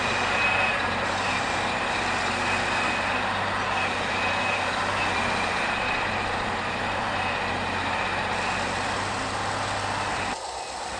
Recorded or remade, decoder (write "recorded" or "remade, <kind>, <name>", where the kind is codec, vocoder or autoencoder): recorded